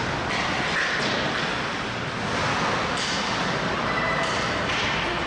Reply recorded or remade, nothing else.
recorded